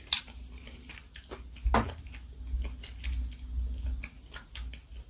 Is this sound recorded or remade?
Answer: recorded